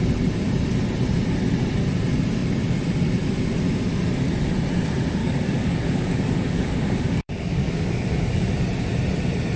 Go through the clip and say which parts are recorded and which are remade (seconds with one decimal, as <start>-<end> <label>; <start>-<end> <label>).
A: 0.0-5.2 recorded; 5.2-8.5 remade; 8.5-9.6 recorded